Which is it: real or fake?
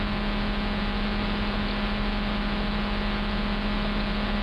real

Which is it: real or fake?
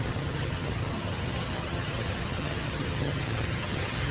fake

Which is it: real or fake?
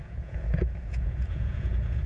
fake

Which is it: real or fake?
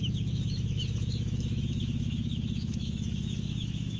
fake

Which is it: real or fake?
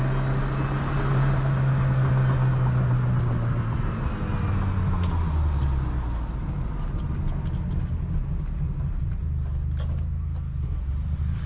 real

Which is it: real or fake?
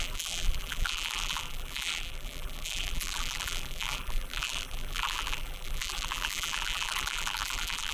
fake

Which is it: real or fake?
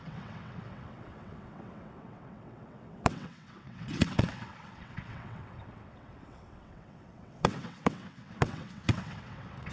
fake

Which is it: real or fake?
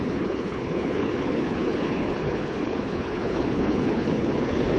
fake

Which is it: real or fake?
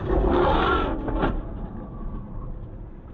fake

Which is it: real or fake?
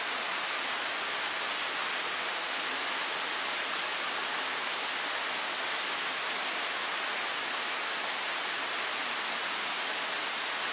real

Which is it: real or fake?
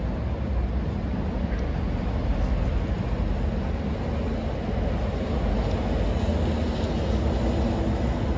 real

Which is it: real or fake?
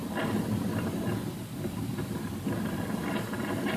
real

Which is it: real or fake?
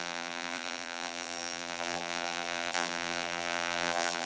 fake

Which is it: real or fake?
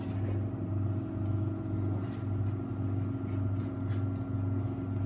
real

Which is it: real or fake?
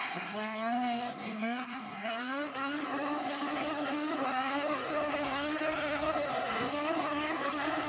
fake